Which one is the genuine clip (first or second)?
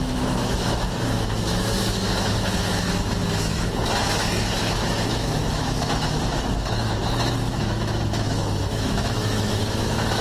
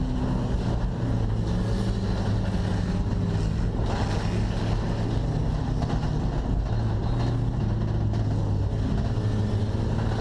second